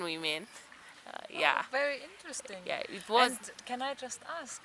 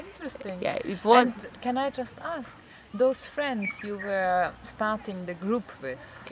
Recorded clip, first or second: first